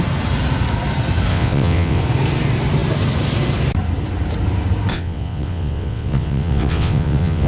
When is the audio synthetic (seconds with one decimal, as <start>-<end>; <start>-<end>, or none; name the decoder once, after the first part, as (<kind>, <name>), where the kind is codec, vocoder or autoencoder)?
1.3-2.0 (vocoder, WaveNeXt); 4.9-7.5